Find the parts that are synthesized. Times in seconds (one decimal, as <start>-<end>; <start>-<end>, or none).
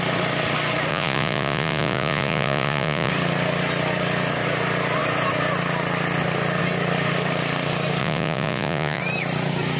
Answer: 0.9-3.1; 8.0-9.0